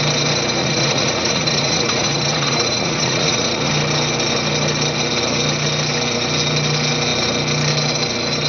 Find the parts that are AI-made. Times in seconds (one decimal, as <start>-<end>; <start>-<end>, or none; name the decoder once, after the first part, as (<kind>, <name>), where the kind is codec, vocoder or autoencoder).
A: 0.6-3.7 (vocoder, Vocos)